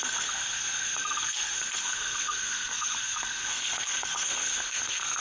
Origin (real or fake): fake